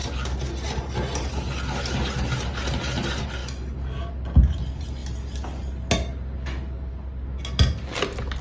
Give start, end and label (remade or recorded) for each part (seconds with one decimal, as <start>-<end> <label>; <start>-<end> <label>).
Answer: 0.0-8.4 recorded